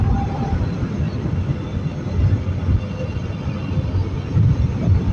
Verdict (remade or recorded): recorded